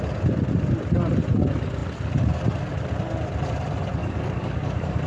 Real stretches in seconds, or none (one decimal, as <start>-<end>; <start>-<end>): 0.0-4.0